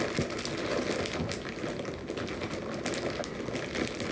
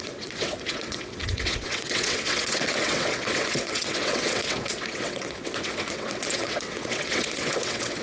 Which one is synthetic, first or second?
second